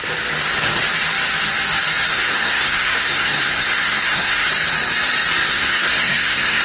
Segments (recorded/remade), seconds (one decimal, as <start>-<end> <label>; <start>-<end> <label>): 0.0-2.1 recorded; 2.1-4.5 remade; 4.5-5.5 recorded; 5.5-6.6 remade